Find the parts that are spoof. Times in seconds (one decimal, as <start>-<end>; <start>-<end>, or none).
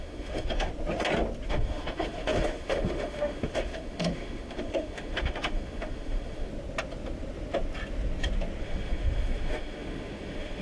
0.0-0.7; 1.5-6.5; 8.6-10.6